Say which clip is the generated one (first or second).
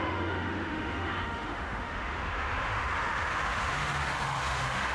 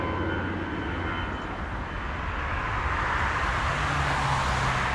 first